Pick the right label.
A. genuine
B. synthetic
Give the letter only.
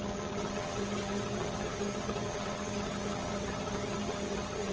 B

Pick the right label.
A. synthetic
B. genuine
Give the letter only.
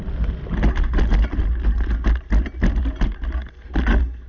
B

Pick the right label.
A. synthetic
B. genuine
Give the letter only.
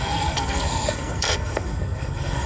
A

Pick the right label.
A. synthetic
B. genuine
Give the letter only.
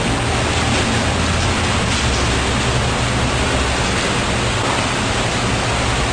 B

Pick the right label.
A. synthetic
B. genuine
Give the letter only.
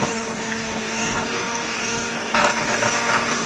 A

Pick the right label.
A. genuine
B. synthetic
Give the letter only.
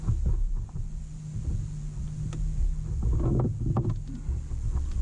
A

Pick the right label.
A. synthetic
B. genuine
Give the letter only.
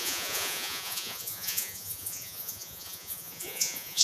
A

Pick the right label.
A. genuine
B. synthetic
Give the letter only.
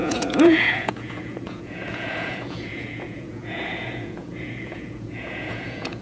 B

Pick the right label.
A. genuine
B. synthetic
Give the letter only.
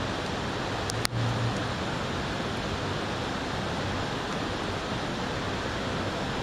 A